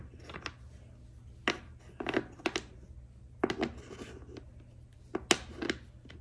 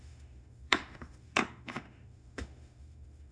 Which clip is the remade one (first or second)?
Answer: second